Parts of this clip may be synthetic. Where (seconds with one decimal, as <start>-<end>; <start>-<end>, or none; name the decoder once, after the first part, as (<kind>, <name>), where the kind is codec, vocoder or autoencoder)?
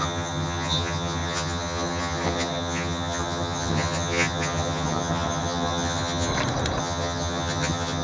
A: 0.0-6.3 (vocoder, HiFi-GAN); 6.8-8.0